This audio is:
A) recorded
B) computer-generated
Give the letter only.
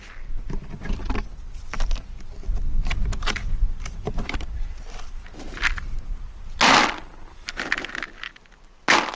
A